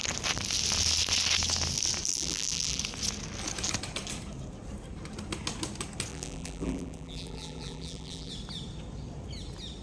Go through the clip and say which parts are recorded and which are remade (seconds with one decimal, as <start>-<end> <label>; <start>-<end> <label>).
0.0-2.1 recorded; 2.1-2.8 remade; 2.8-6.1 recorded; 6.1-8.3 remade; 8.3-9.8 recorded